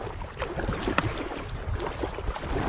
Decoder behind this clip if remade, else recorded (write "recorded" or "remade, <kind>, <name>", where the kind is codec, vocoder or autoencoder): recorded